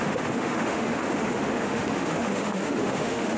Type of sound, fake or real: fake